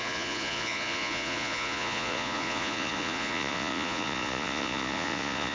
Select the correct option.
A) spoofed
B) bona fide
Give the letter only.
A